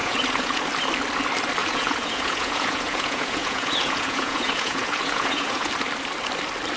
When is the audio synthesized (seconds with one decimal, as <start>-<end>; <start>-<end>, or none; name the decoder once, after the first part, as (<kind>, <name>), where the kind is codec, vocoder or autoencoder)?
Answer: 0.0-0.6 (vocoder, Vocos); 1.6-5.7